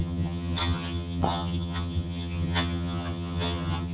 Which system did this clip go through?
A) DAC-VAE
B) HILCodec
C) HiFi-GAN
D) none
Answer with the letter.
C